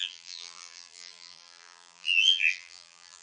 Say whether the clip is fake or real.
fake